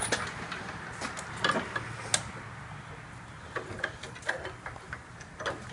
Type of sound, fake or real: real